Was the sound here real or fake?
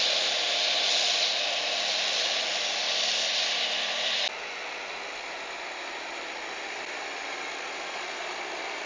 real